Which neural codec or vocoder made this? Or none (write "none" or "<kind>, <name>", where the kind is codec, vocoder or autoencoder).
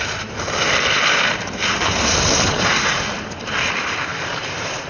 vocoder, BigVGAN v2